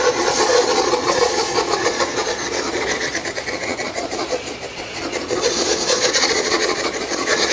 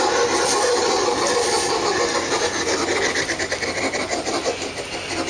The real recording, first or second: second